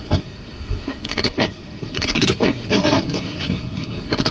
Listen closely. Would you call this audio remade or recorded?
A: remade